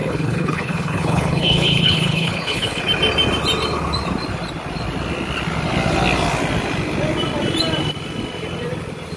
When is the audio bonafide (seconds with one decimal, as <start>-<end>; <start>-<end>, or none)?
2.8-9.2